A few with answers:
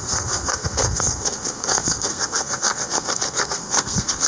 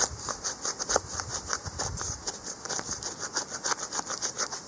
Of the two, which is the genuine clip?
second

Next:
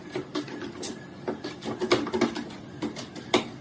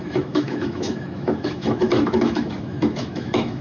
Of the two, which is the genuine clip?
first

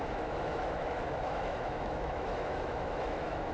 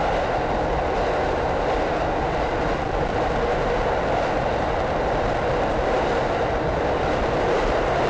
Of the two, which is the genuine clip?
second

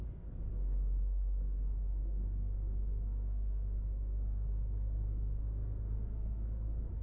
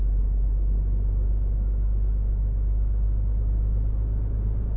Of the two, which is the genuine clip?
second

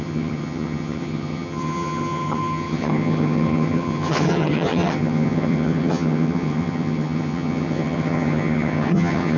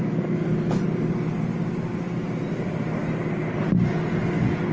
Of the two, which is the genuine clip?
second